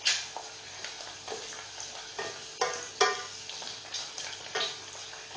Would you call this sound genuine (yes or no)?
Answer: yes